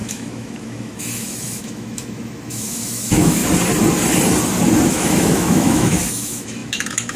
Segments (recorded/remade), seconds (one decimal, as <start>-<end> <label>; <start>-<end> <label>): 0.0-3.4 remade; 3.4-4.9 recorded; 4.9-7.2 remade